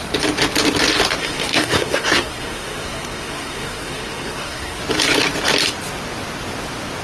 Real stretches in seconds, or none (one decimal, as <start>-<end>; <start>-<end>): 0.0-1.2; 4.8-7.0